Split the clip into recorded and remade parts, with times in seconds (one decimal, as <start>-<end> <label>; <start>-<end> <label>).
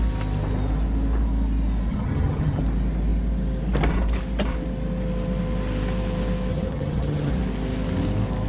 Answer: 0.0-1.9 recorded; 1.9-2.6 remade; 2.6-6.5 recorded; 6.5-7.3 remade; 7.3-8.5 recorded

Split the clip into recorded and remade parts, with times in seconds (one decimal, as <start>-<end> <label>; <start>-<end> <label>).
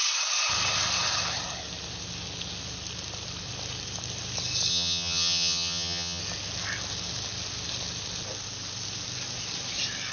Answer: 0.0-4.7 recorded; 4.7-6.2 remade; 6.2-10.1 recorded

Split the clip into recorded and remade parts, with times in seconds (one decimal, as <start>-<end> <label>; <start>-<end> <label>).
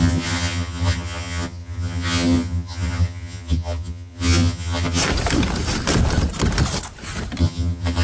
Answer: 0.0-5.0 remade; 5.0-7.4 recorded; 7.4-8.0 remade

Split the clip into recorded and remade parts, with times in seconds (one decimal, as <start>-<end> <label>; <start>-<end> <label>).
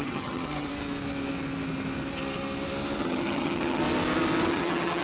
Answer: 0.0-0.7 remade; 0.7-3.0 recorded; 3.0-3.8 remade; 3.8-4.5 recorded; 4.5-5.0 remade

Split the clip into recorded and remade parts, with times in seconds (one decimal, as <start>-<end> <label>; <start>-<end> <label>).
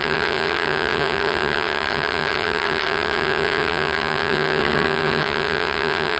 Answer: 0.0-6.2 remade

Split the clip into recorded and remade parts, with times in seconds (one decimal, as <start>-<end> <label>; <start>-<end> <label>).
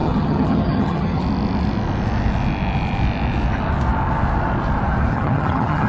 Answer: 0.0-1.2 remade; 1.2-5.1 recorded; 5.1-5.9 remade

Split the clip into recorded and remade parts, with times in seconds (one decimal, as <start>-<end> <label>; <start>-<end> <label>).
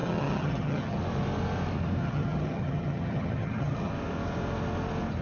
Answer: 0.0-1.0 remade; 1.0-2.0 recorded; 2.0-3.9 remade; 3.9-5.2 recorded